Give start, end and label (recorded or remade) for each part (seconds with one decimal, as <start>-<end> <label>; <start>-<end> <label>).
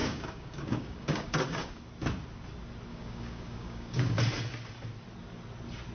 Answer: 0.0-1.8 remade; 1.8-2.9 recorded; 2.9-4.2 remade; 4.2-5.9 recorded